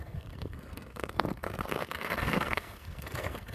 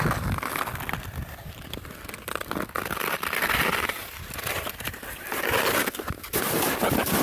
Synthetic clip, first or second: first